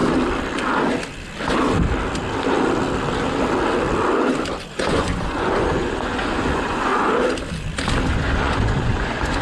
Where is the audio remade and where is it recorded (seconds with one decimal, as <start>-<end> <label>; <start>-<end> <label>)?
0.0-4.7 recorded; 4.7-6.9 remade; 6.9-8.1 recorded; 8.1-9.4 remade